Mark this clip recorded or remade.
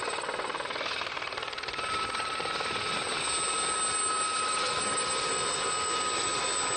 recorded